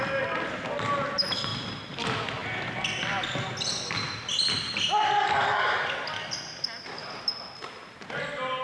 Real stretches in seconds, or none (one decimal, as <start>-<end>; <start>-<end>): 0.0-4.3; 5.2-7.0; 8.2-8.6